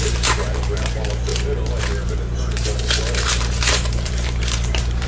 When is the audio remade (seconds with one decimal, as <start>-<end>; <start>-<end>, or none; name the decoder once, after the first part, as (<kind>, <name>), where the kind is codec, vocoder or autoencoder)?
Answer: 0.0-1.3 (vocoder, BigVGAN v2); 1.8-5.1